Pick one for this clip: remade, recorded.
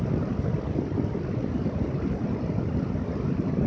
recorded